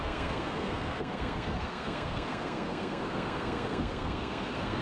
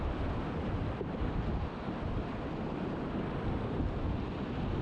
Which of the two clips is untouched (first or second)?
second